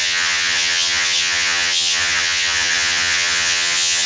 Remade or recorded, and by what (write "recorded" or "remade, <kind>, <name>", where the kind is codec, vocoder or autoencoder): remade, vocoder, HiFi-GAN